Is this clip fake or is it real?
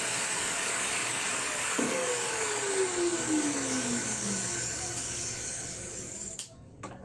fake